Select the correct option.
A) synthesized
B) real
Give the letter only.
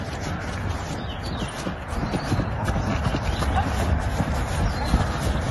B